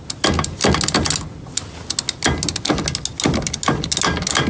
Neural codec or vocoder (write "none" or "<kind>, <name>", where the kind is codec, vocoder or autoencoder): none